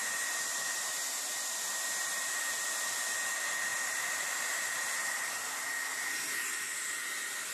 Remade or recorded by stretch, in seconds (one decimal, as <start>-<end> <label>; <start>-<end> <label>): 0.0-2.8 remade; 2.8-3.7 recorded; 3.7-5.5 remade; 5.5-7.5 recorded